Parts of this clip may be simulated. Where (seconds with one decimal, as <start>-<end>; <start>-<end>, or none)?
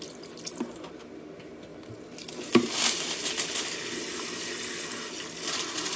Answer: none